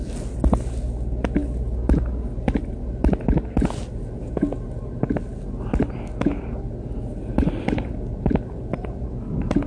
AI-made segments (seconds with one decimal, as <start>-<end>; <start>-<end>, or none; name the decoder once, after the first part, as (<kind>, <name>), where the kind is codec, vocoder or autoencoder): none